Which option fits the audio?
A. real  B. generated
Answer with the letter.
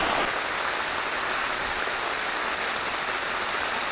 A